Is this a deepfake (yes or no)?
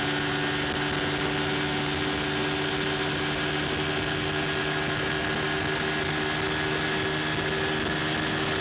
no